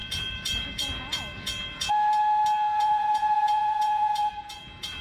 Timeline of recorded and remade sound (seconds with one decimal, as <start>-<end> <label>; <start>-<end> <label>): 0.0-1.9 remade; 1.9-2.8 recorded; 2.8-5.0 remade

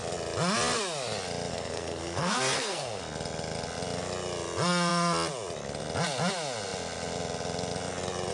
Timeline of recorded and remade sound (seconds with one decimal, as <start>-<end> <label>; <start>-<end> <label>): 0.0-1.5 recorded; 1.5-3.0 remade; 3.0-8.3 recorded

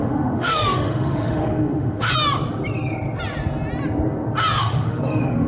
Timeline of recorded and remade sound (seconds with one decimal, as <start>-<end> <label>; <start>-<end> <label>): 0.0-2.1 remade; 2.1-4.6 recorded; 4.6-5.5 remade

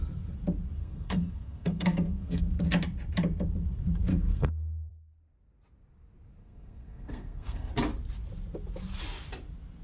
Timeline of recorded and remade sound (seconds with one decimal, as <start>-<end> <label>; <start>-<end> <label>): 0.0-0.8 recorded; 0.8-2.4 remade; 2.4-4.1 recorded; 4.1-4.9 remade; 4.9-6.4 recorded; 6.4-7.7 remade; 7.7-9.8 recorded

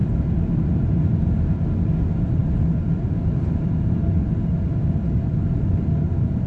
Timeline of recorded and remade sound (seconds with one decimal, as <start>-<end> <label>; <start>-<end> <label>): 0.0-6.5 recorded

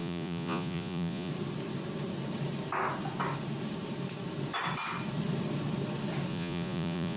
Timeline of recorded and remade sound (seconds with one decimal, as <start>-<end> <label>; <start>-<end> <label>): 0.0-1.3 remade; 1.3-6.3 recorded; 6.3-7.2 remade

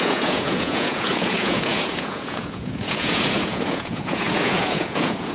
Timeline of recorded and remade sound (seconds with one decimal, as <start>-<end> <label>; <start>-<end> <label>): 0.0-5.3 remade

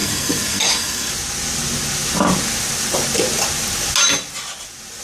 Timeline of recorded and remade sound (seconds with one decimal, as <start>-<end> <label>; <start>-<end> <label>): 0.0-1.1 remade; 1.1-5.0 recorded